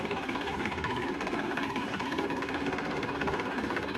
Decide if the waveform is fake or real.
fake